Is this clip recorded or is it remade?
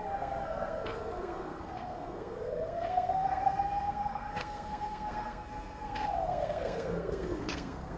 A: remade